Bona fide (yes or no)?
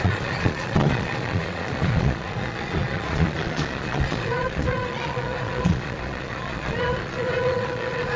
no